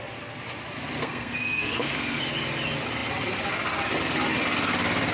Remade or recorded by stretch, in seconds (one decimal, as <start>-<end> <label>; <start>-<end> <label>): 0.0-1.0 recorded; 1.0-2.2 remade; 2.2-5.1 recorded